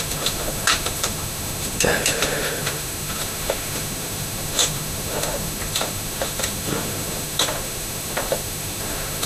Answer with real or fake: fake